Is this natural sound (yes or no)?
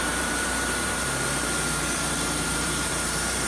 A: no